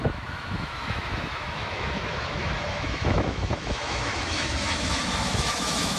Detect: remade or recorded remade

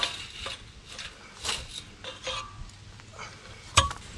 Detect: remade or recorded recorded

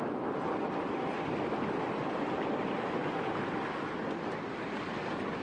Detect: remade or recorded recorded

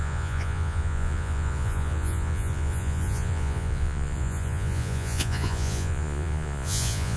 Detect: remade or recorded remade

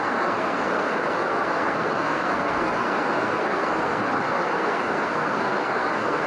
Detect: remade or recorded remade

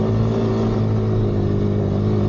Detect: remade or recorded recorded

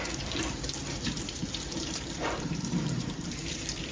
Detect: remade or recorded remade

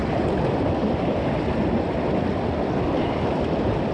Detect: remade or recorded recorded